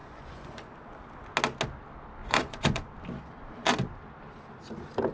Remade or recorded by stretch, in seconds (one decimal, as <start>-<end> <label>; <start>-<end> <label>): 0.0-0.7 remade; 0.7-2.2 recorded; 2.2-2.9 remade; 2.9-5.1 recorded